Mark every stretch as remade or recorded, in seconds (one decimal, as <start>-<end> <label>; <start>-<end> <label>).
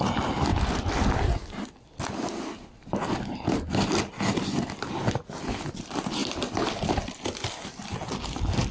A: 0.0-6.2 recorded; 6.2-7.7 remade; 7.7-8.7 recorded